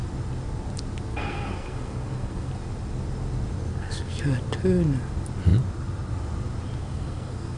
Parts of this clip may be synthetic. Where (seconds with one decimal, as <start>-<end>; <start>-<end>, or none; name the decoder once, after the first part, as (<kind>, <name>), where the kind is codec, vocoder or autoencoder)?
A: 1.1-2.5 (codec, SNAC); 3.7-4.2; 6.8-7.6